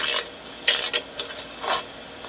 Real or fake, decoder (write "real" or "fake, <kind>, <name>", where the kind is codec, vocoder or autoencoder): real